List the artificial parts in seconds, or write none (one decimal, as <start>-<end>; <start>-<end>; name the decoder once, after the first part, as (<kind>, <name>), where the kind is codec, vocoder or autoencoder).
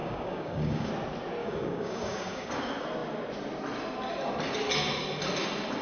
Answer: 0.0-0.9 (codec, DAC); 1.4-2.5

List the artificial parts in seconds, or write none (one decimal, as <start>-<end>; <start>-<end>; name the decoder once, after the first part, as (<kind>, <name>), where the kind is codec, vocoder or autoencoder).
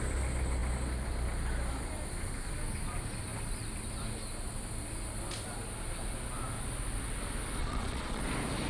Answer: 7.6-8.2 (vocoder, Vocos)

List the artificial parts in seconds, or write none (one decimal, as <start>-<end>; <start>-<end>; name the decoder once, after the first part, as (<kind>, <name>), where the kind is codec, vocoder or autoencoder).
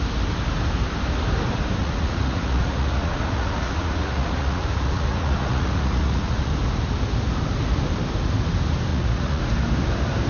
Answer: 1.8-6.5 (vocoder, Vocos); 8.9-9.4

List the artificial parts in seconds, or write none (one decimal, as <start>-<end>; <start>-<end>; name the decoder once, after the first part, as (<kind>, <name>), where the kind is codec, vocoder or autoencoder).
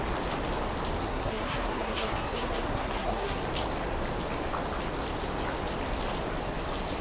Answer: 1.0-3.4 (codec, SNAC)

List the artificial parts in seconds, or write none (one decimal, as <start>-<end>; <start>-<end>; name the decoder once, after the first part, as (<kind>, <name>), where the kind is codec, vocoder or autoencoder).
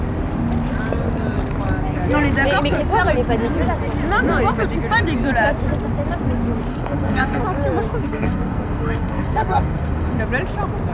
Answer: 6.7-7.4 (codec, SNAC); 8.0-10.2